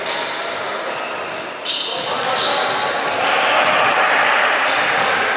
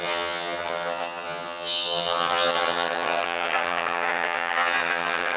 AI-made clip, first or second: second